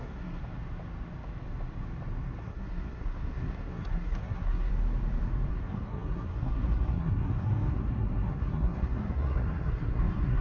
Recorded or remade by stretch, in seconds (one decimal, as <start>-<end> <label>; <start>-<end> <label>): 0.0-0.4 remade; 0.4-2.4 recorded; 2.4-4.7 remade; 4.7-5.5 recorded; 5.5-10.4 remade